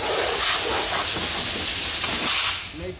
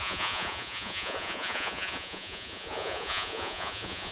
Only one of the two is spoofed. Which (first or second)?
second